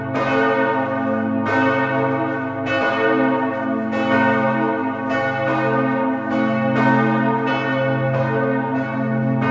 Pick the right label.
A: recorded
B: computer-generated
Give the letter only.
A